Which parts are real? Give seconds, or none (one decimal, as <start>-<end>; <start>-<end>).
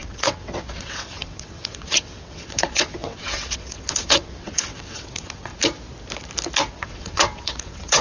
5.5-6.7